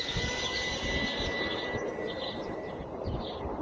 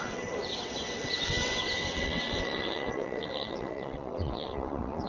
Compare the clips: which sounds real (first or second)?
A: first